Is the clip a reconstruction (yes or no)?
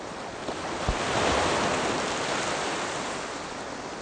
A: no